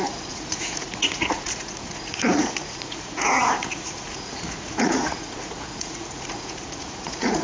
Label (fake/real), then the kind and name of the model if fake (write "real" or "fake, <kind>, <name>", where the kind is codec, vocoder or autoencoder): fake, vocoder, Vocos